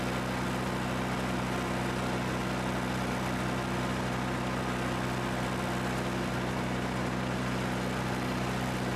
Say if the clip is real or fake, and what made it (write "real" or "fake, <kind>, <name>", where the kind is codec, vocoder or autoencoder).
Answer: real